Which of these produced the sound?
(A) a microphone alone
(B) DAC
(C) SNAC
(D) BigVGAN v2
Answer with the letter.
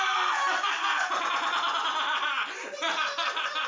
A